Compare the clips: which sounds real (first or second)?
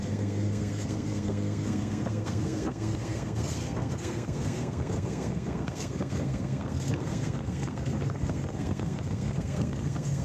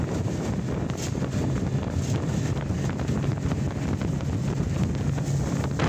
second